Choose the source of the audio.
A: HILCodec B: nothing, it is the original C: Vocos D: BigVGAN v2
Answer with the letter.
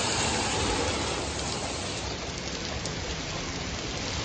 B